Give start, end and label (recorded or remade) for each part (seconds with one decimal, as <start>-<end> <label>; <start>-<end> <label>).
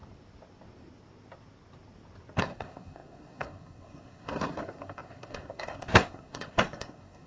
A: 0.0-2.4 recorded; 2.4-7.3 remade